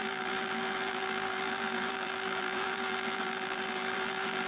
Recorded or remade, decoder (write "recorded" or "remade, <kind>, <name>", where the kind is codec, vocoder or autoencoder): remade, vocoder, BigVGAN v2